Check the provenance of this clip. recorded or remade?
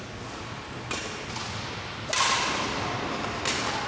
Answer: recorded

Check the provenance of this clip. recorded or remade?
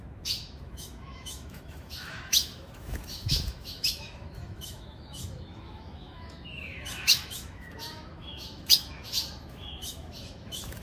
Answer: remade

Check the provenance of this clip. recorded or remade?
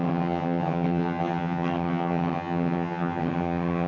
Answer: remade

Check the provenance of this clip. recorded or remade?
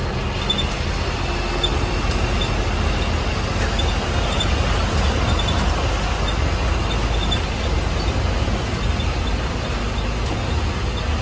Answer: recorded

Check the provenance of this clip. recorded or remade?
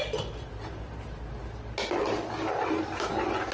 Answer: recorded